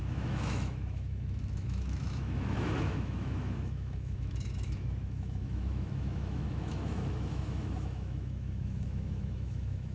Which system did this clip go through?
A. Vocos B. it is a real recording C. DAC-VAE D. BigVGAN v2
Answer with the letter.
C